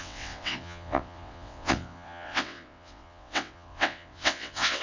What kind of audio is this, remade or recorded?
remade